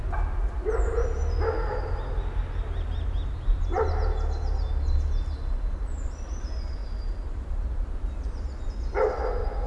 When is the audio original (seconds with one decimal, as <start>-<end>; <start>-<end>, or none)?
0.0-6.8; 7.9-9.7